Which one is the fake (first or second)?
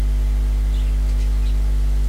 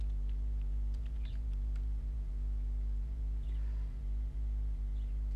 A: second